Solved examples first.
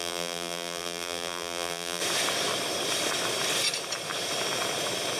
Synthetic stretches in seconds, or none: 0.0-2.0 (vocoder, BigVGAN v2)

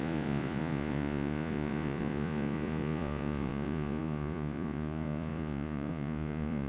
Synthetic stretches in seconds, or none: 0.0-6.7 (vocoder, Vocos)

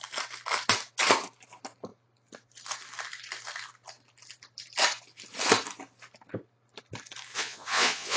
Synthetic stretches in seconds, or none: 7.3-8.2 (vocoder, Vocos)

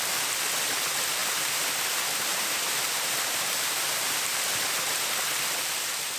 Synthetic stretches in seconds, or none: 1.2-4.4 (vocoder, BigVGAN v2)